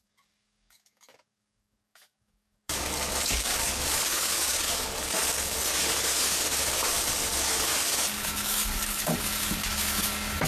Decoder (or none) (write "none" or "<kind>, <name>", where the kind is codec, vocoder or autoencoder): codec, DAC